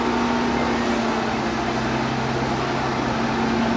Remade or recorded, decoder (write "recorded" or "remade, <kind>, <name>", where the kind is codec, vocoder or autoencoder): recorded